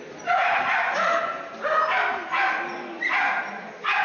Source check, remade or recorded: remade